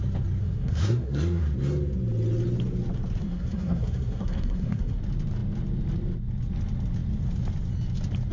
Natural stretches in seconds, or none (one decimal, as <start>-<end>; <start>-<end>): 0.0-0.4; 1.4-3.2; 5.0-8.3